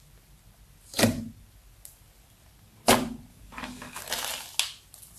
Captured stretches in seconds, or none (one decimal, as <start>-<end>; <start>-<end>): 0.0-3.3; 4.0-5.2